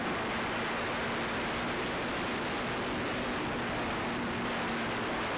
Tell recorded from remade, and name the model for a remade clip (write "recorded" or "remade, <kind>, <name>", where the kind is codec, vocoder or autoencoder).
recorded